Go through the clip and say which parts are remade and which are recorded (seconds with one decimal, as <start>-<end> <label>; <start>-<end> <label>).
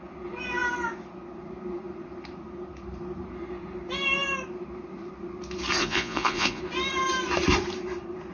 0.0-5.8 recorded; 5.8-6.6 remade; 6.6-8.3 recorded